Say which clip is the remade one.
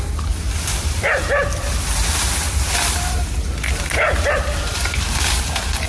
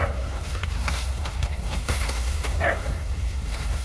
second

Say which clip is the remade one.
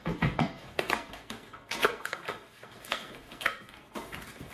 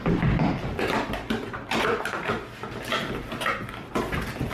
first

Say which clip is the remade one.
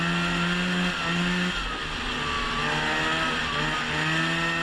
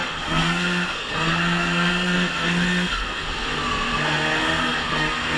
second